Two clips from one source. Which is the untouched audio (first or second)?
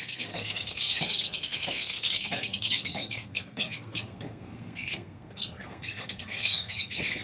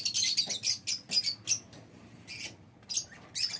second